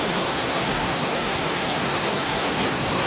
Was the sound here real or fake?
fake